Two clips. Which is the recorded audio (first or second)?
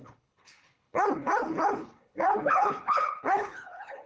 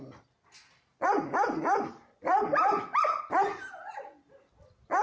second